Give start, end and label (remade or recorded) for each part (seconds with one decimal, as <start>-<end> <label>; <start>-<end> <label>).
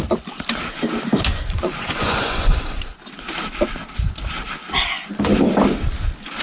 0.0-1.3 recorded; 1.3-2.8 remade; 2.8-6.4 recorded